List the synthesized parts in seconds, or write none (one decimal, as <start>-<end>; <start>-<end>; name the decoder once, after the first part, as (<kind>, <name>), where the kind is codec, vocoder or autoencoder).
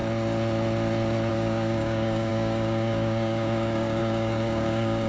1.3-5.1 (codec, DAC)